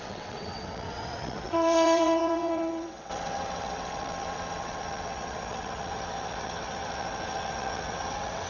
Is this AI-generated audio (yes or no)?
yes